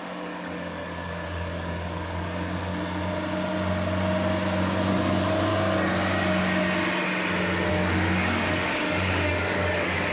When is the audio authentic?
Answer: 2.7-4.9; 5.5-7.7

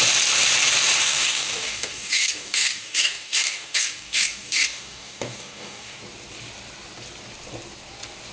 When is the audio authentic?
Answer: 0.0-1.0; 6.0-8.3

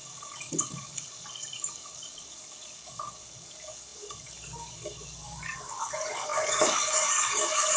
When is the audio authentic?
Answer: none

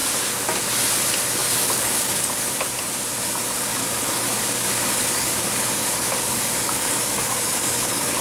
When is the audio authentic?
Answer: 0.0-1.4; 2.4-3.7

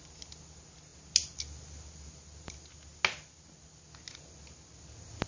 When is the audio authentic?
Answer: 0.0-5.3